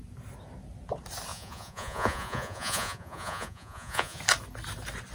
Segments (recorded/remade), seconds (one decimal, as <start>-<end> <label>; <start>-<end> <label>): 0.0-1.3 recorded; 1.3-4.2 remade; 4.2-5.1 recorded